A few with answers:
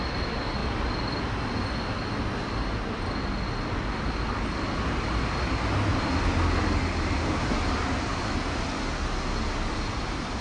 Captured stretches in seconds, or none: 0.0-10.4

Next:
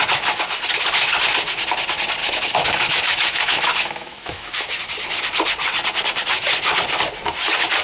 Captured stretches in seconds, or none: 0.0-2.2; 4.8-7.8

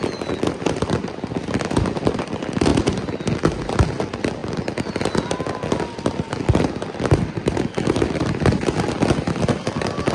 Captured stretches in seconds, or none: 0.0-10.1

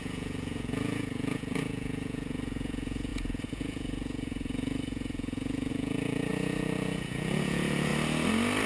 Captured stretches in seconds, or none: 7.9-8.7

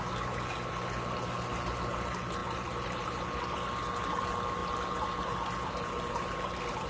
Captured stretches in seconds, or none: 0.0-6.9

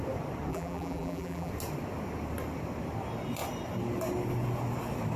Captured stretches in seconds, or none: 0.0-0.5; 1.5-5.2

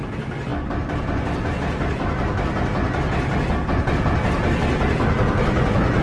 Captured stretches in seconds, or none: 0.0-6.0

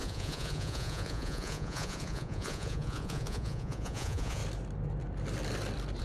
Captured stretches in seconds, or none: 4.4-6.0